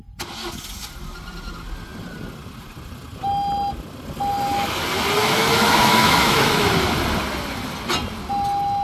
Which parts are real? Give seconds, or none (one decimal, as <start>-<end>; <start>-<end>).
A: 0.0-5.2; 6.7-8.8